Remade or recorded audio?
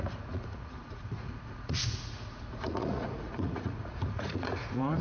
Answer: remade